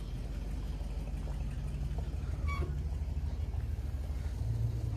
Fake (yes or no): no